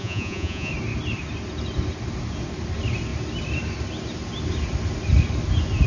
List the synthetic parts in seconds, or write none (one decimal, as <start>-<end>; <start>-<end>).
0.0-0.7